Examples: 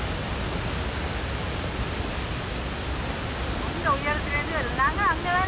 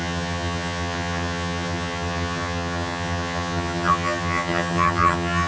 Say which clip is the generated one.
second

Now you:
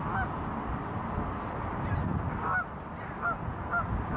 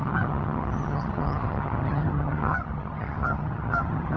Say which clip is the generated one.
second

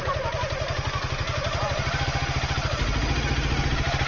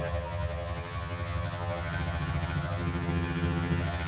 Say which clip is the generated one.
second